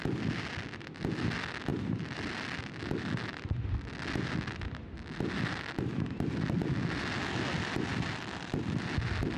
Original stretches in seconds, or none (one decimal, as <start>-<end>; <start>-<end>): 0.0-1.7; 2.6-9.4